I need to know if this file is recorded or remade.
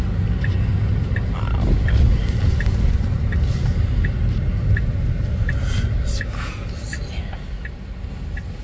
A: recorded